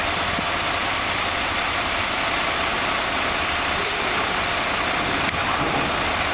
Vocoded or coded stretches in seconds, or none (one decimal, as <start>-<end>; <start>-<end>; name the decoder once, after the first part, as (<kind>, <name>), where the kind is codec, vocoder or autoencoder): 0.8-2.0 (vocoder, BigVGAN v2); 2.7-3.9